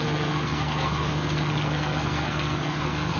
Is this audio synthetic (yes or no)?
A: yes